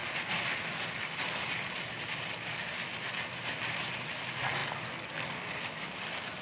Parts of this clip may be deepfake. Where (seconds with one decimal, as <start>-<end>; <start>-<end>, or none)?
none